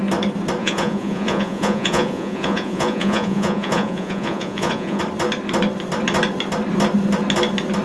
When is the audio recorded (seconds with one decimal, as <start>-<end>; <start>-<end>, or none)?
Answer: 0.0-0.6; 5.0-7.8